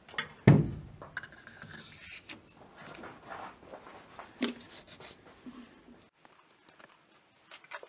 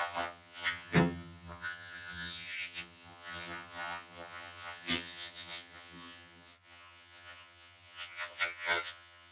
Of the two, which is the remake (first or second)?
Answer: second